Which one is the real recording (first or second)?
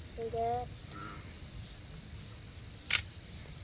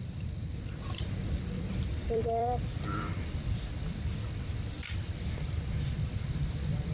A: first